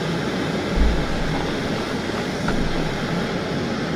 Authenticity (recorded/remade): recorded